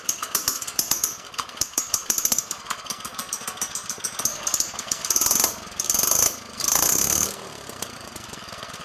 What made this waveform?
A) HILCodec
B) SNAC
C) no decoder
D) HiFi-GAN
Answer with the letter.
B